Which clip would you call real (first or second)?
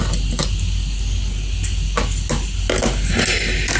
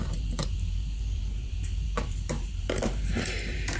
first